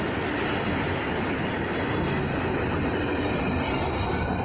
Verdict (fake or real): real